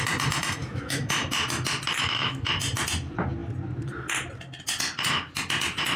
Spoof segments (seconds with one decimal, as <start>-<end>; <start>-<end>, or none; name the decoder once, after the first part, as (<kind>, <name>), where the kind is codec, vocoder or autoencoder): 0.6-1.1 (autoencoder, DAC-VAE); 1.9-2.5